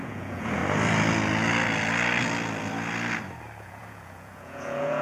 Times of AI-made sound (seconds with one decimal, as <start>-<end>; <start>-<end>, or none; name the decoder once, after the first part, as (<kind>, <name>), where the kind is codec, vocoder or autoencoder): 0.0-0.6 (vocoder, Vocos); 3.6-5.0